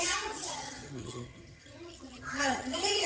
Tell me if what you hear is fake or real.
fake